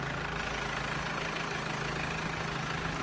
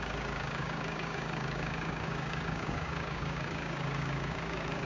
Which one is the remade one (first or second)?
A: second